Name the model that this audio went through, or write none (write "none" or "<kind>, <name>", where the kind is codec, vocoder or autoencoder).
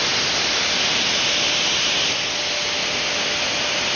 none